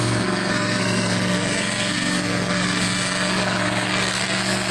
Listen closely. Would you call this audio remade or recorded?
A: remade